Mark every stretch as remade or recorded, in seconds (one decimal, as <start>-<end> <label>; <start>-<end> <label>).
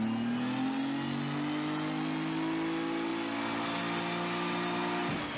0.0-5.4 recorded